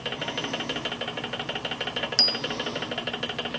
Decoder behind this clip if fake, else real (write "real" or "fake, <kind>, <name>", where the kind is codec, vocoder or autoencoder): real